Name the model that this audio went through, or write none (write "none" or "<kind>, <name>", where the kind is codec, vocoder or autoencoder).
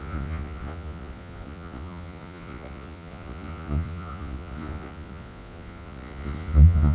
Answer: vocoder, Vocos